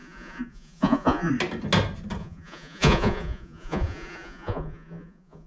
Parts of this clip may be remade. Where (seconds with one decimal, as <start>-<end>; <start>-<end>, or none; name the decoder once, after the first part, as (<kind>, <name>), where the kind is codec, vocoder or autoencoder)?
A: 0.0-1.3 (vocoder, Vocos); 2.2-5.5